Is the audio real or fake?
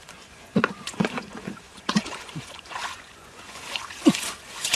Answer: fake